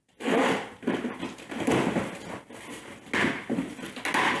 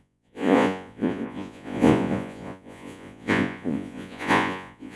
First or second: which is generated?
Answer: second